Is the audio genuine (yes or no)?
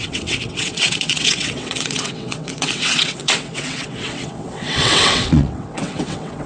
no